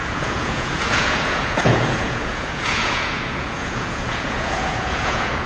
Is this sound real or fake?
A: fake